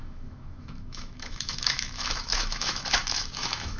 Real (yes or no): no